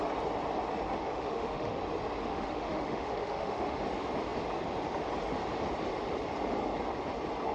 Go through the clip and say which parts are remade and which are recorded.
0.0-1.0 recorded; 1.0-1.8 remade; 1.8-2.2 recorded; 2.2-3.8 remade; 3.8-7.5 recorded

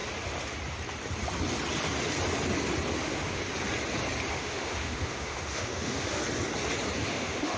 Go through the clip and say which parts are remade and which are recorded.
0.0-3.0 recorded; 3.0-3.4 remade; 3.4-4.3 recorded; 4.3-6.2 remade; 6.2-7.1 recorded; 7.1-7.6 remade